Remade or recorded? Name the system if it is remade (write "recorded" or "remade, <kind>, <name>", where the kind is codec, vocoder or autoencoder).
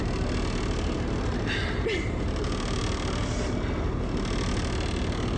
recorded